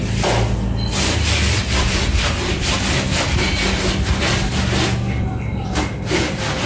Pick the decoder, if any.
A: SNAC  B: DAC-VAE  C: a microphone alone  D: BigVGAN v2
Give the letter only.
C